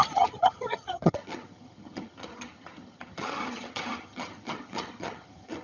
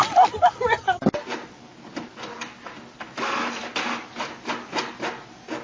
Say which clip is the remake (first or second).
first